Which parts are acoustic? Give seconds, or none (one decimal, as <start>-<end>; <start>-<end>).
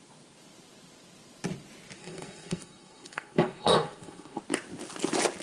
0.0-2.0; 4.4-5.4